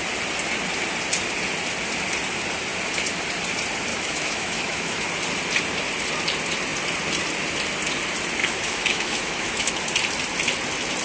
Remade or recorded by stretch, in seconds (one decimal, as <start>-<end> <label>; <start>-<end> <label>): 0.0-3.9 recorded; 3.9-5.1 remade; 5.1-8.4 recorded; 8.4-9.7 remade; 9.7-11.0 recorded